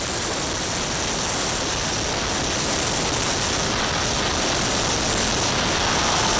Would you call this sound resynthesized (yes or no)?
no